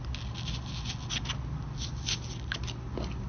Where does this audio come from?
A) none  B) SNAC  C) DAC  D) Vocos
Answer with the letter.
A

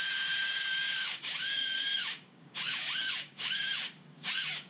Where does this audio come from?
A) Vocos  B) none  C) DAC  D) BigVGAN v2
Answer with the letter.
C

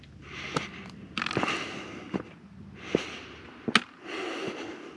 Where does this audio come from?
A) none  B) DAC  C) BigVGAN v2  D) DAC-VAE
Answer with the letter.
A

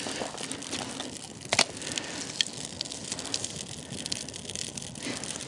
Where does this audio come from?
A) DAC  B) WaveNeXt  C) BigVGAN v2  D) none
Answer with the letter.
D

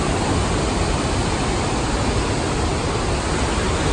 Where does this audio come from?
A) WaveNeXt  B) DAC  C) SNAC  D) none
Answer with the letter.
D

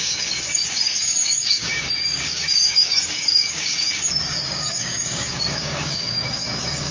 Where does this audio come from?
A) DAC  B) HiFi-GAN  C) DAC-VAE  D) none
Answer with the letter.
A